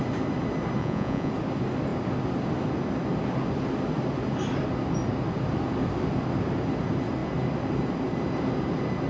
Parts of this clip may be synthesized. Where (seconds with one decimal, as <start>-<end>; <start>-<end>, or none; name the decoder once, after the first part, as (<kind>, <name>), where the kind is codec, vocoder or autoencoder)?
0.8-1.3 (vocoder, Vocos)